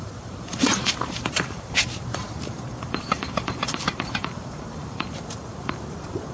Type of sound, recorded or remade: remade